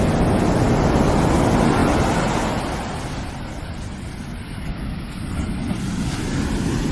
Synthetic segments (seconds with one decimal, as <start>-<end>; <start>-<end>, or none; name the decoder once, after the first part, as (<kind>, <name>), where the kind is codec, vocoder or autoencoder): none